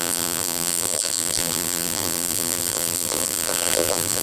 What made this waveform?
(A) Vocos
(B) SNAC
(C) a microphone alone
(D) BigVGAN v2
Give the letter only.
D